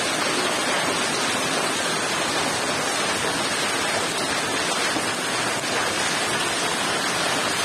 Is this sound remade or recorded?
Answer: recorded